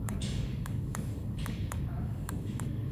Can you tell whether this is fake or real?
fake